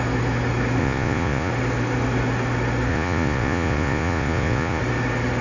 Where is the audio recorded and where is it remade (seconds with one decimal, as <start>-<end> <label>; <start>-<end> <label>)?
0.0-0.8 recorded; 0.8-1.5 remade; 1.5-2.9 recorded; 2.9-4.8 remade; 4.8-5.4 recorded